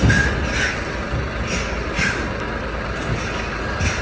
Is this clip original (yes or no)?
yes